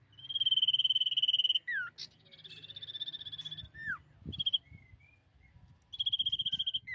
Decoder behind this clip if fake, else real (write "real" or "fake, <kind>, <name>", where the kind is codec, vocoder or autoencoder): real